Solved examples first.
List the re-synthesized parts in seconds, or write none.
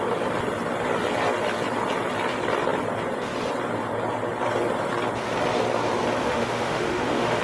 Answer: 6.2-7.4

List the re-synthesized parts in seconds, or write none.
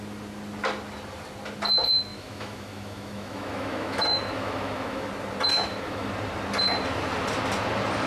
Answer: 2.1-5.1; 5.5-6.1